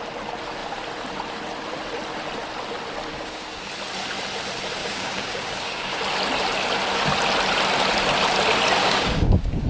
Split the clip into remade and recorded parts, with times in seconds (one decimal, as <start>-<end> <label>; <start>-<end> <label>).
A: 0.0-3.1 recorded; 3.1-3.7 remade; 3.7-4.8 recorded; 4.8-6.0 remade; 6.0-8.8 recorded; 8.8-9.7 remade